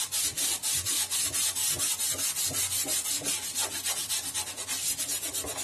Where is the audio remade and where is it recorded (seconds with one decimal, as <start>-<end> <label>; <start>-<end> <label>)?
0.0-5.6 recorded